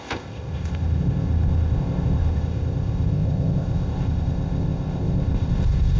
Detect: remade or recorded remade